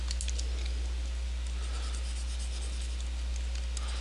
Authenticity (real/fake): real